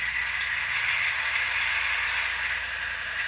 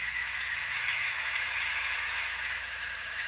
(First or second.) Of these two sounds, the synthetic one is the second